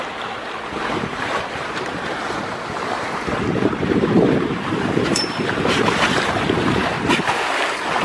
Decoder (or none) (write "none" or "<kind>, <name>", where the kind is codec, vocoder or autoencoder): vocoder, BigVGAN v2